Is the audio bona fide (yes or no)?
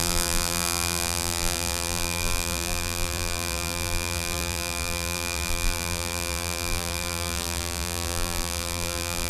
no